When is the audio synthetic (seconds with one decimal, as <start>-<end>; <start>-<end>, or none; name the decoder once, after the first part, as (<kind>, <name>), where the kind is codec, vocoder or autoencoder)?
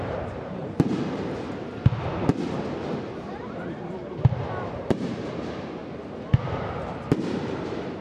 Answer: 0.0-0.6 (vocoder, BigVGAN v2); 2.9-4.0; 4.8-5.8; 6.4-8.0